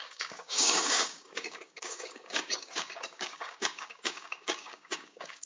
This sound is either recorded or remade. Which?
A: remade